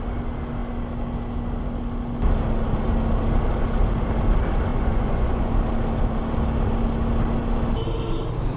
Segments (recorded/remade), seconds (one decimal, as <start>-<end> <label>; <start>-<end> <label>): 0.0-4.7 recorded; 4.7-5.5 remade; 5.5-8.6 recorded